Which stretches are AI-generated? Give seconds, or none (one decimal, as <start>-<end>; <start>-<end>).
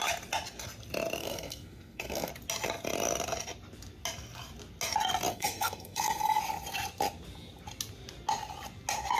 1.2-2.3; 5.3-6.4